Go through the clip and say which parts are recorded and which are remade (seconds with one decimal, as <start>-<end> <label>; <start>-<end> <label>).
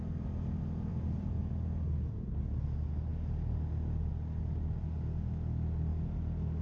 0.0-0.9 recorded; 0.9-1.5 remade; 1.5-6.6 recorded